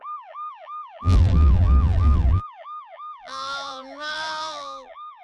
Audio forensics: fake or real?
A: fake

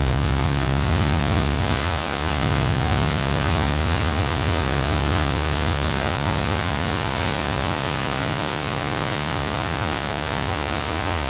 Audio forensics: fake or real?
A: fake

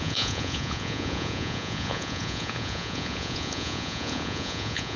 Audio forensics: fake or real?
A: fake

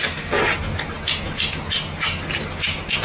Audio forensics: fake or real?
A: real